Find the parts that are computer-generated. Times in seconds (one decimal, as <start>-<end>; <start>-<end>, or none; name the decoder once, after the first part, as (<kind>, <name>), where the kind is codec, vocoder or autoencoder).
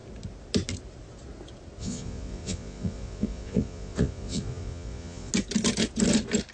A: 1.8-5.3 (vocoder, Vocos)